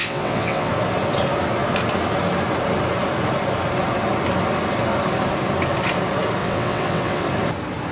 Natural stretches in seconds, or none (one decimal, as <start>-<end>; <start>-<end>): 0.7-6.4; 7.2-7.9